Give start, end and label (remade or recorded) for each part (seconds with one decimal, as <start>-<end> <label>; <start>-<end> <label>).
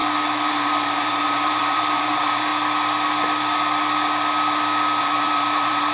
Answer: 0.0-0.5 recorded; 0.5-2.5 remade; 2.5-5.0 recorded; 5.0-5.9 remade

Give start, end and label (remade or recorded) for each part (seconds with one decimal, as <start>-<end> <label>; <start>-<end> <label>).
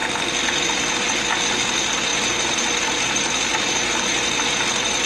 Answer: 0.0-5.1 recorded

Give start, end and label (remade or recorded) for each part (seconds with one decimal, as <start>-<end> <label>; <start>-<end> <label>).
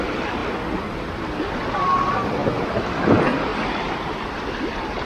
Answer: 0.0-0.4 remade; 0.4-1.7 recorded; 1.7-5.1 remade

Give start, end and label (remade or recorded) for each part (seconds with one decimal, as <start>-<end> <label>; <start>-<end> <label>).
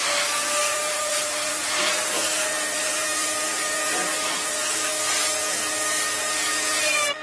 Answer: 0.0-0.6 recorded; 0.6-4.9 remade; 4.9-7.2 recorded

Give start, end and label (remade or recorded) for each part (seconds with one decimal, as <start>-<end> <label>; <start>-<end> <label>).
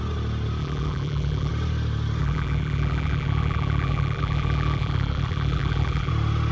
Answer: 0.0-0.6 recorded; 0.6-1.5 remade; 1.5-2.2 recorded; 2.2-6.1 remade; 6.1-6.5 recorded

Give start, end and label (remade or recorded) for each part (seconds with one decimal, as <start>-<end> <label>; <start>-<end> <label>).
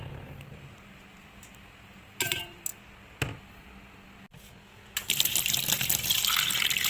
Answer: 0.0-2.7 remade; 2.7-6.9 recorded